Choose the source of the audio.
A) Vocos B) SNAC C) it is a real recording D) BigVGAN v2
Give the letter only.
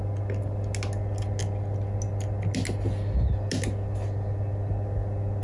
C